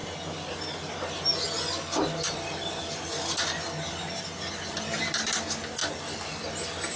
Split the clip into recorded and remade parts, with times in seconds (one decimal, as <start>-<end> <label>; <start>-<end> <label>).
0.0-7.0 recorded